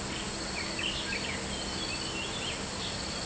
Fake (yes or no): no